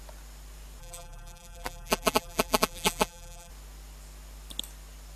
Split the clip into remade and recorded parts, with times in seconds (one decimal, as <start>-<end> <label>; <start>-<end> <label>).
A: 0.0-0.8 recorded; 0.8-3.5 remade; 3.5-5.2 recorded